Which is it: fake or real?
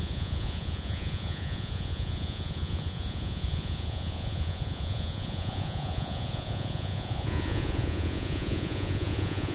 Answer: fake